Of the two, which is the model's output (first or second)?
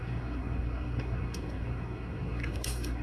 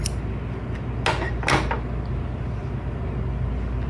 first